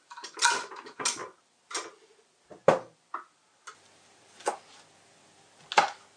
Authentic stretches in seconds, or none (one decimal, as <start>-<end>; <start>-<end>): 0.0-6.2